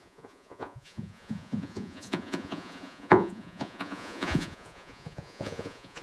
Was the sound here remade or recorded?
remade